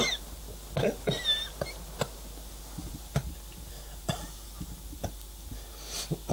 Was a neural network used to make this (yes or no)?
no